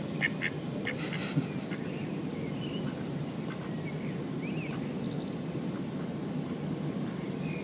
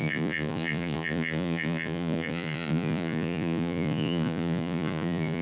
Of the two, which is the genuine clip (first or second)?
first